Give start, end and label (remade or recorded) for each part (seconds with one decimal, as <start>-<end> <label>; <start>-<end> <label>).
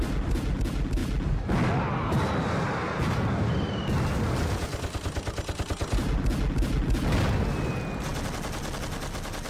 0.0-9.5 recorded